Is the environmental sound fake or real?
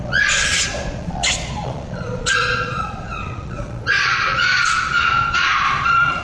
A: fake